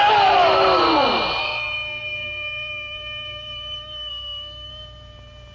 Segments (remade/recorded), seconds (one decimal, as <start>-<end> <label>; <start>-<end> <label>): 0.0-1.4 recorded; 1.4-4.7 remade; 4.7-5.5 recorded